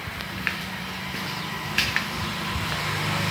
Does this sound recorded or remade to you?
recorded